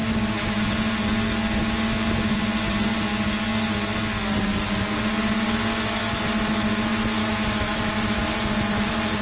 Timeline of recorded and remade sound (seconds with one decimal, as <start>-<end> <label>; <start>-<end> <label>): 0.0-0.6 remade; 0.6-7.2 recorded; 7.2-7.8 remade; 7.8-9.2 recorded